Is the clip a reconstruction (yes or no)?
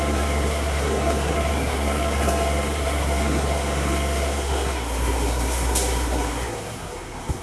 yes